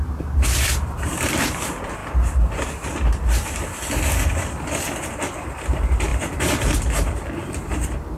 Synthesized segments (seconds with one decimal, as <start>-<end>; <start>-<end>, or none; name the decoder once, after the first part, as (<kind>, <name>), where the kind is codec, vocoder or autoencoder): 0.0-2.0 (vocoder, BigVGAN v2); 5.1-8.2